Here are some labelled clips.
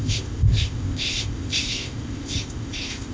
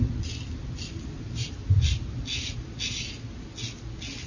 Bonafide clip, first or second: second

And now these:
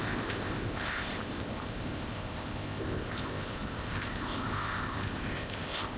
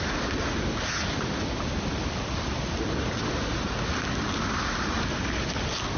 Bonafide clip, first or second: second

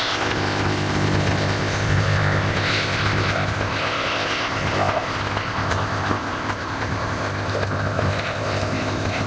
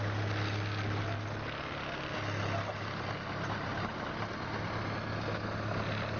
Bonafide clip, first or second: second